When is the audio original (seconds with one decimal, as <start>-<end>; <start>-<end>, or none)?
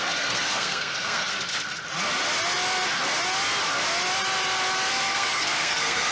1.3-4.9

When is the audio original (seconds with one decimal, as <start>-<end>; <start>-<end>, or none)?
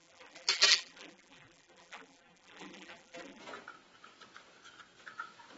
3.4-5.6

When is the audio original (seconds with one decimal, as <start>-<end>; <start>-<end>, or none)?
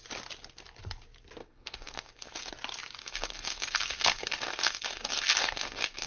0.0-1.4; 2.5-3.0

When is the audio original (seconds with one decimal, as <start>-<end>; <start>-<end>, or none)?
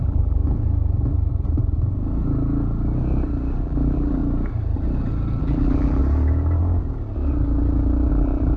0.4-3.6; 4.2-5.4; 6.0-8.1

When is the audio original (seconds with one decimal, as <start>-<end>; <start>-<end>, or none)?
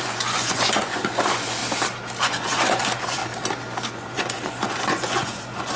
1.6-2.2; 3.2-3.9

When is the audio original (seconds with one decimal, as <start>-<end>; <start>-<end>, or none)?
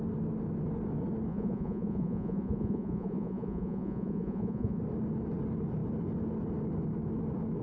0.0-1.3; 4.8-7.6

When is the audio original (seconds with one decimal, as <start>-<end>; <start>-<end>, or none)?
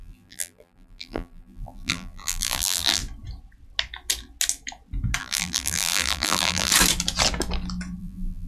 3.0-5.2; 6.7-8.0